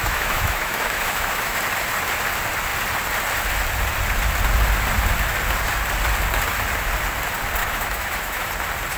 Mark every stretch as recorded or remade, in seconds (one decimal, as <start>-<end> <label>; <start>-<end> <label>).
0.0-1.6 remade; 1.6-7.6 recorded; 7.6-8.5 remade; 8.5-9.0 recorded